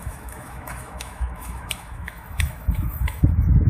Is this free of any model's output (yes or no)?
no